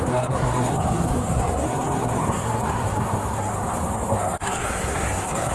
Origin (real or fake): fake